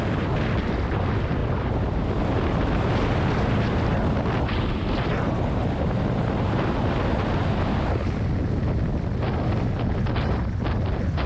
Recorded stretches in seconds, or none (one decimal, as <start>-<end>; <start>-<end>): 0.0-11.3